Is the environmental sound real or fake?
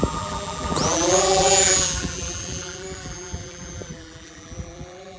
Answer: fake